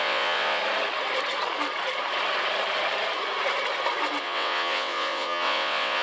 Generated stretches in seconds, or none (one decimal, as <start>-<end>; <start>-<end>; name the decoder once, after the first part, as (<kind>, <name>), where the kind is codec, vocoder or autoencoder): 0.0-0.6 (vocoder, WaveNeXt); 4.2-6.0